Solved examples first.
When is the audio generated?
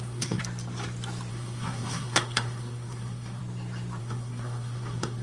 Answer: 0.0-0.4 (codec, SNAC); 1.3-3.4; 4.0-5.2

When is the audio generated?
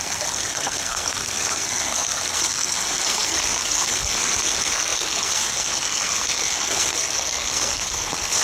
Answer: 0.0-8.4 (codec, SNAC)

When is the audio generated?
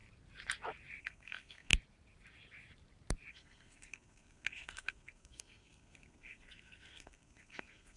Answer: 1.0-1.7 (codec, SNAC); 3.3-8.0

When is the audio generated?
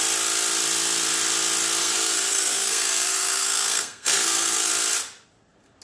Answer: 1.8-4.7 (codec, SNAC)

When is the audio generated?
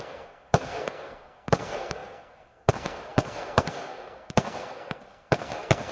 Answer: 0.0-5.9 (codec, SNAC)